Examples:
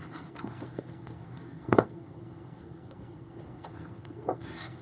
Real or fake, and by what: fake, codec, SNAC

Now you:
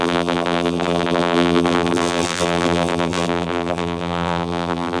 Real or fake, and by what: fake, vocoder, BigVGAN v2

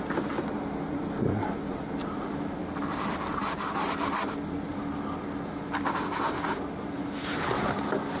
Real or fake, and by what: real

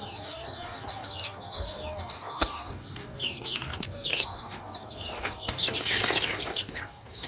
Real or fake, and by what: fake, codec, DAC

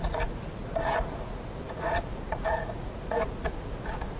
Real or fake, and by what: fake, vocoder, Vocos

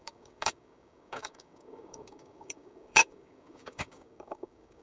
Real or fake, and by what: fake, codec, DAC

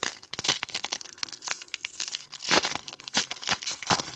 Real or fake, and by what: fake, codec, SNAC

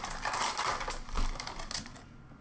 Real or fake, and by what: real